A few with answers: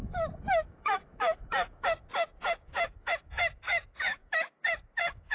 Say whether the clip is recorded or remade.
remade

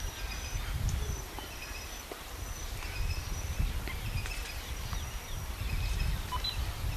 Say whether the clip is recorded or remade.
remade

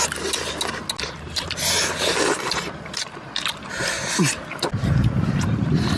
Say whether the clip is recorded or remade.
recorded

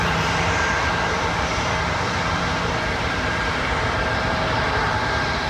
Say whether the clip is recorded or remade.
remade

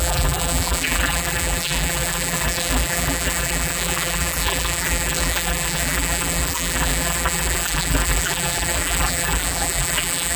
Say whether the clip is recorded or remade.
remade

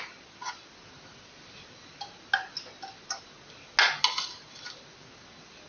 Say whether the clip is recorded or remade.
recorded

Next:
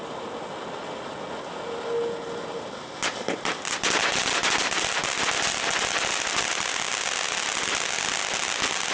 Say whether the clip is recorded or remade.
recorded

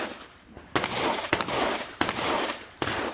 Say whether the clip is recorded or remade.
recorded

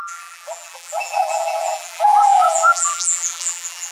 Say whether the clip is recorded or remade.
remade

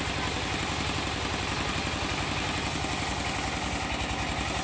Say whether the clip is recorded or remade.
recorded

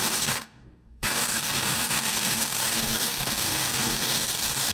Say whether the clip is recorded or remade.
remade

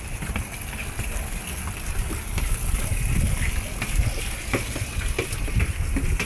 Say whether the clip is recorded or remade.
recorded